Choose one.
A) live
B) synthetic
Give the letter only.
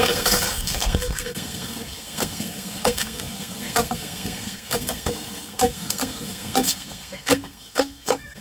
B